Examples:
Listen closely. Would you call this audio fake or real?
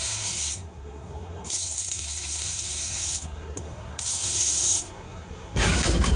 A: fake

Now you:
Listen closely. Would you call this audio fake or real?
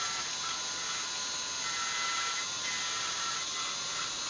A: real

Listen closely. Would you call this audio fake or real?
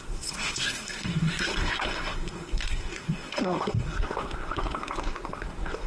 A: fake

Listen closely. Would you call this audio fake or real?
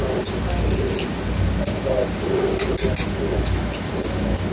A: real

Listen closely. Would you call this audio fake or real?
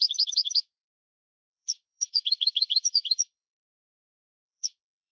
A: fake